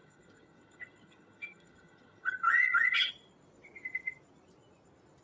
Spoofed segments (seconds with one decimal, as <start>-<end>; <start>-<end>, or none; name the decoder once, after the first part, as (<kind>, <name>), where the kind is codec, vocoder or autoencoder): 0.0-3.1 (vocoder, HiFi-GAN)